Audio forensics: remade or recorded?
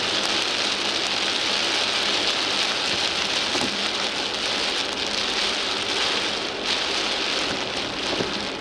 recorded